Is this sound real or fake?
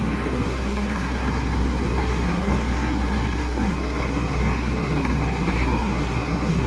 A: fake